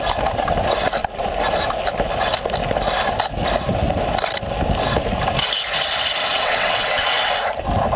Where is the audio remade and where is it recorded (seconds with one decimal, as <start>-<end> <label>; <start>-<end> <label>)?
0.0-6.2 recorded; 6.2-7.3 remade; 7.3-8.0 recorded